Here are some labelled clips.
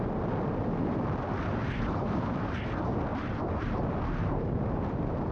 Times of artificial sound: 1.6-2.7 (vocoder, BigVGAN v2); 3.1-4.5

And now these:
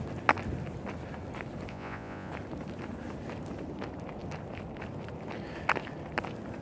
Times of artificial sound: 1.7-2.3 (vocoder, Vocos)

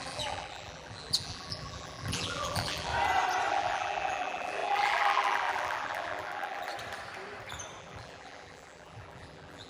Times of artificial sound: 0.0-2.9 (vocoder, BigVGAN v2); 3.5-6.7; 7.8-9.7

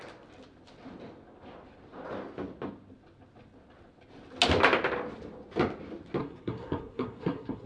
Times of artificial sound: 6.2-7.7 (codec, SNAC)

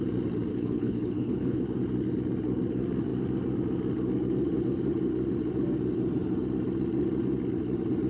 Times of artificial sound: 0.5-1.6 (codec, HILCodec)

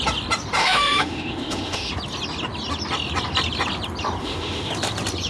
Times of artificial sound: 0.6-1.9 (autoencoder, DAC-VAE); 4.2-4.7

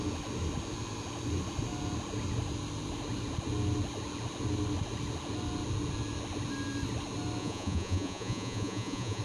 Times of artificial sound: 7.4-9.2 (vocoder, Vocos)